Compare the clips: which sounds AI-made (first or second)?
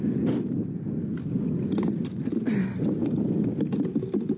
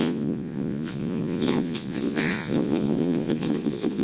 second